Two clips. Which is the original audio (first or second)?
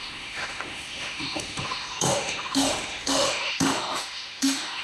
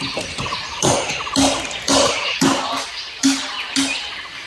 second